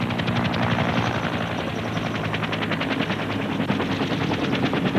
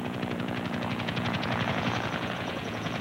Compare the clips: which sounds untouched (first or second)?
first